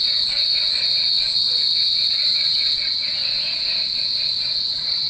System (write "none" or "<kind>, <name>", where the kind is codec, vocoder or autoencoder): vocoder, Vocos